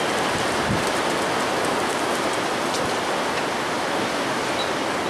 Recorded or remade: recorded